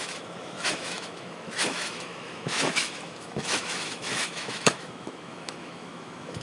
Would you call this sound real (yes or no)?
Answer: no